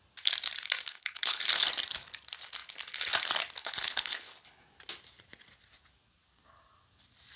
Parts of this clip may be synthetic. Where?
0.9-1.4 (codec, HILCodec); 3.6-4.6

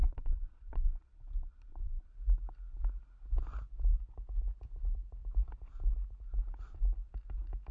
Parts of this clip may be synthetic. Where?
0.0-2.1 (vocoder, Vocos)

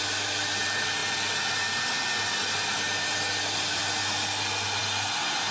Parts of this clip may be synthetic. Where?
none

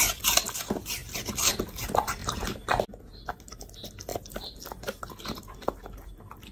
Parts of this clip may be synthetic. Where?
none

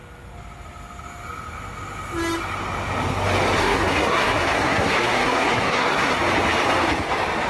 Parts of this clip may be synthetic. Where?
3.6-6.2 (codec, SNAC)

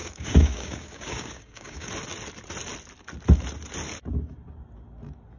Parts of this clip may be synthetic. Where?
0.0-1.9 (codec, DAC)